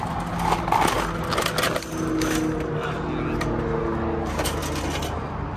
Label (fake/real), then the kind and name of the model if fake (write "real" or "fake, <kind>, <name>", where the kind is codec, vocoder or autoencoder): real